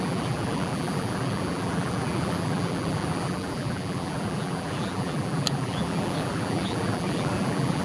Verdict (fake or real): fake